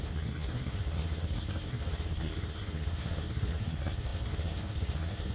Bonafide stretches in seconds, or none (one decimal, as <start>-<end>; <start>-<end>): none